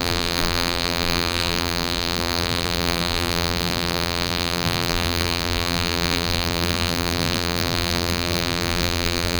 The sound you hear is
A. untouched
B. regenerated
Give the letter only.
B